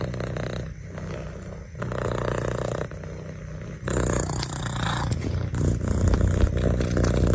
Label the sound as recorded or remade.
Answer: recorded